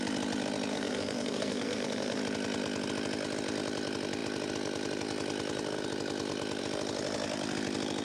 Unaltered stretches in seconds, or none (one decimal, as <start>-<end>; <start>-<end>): 0.0-0.7; 2.2-8.0